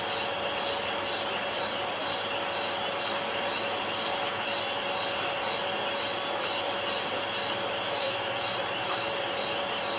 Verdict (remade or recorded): recorded